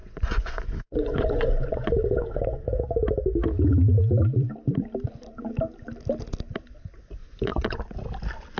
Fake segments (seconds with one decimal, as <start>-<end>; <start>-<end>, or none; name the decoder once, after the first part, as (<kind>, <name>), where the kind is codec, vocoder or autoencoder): 0.0-2.8 (vocoder, Vocos); 7.2-7.9